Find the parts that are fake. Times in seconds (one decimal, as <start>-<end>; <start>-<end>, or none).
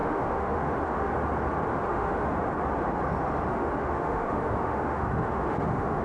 0.0-1.1; 1.7-2.3; 3.5-6.0